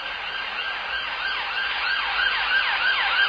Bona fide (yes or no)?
yes